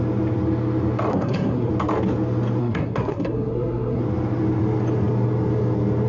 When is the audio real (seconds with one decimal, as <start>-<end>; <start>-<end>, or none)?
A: 0.0-1.1; 1.7-2.6; 4.0-6.1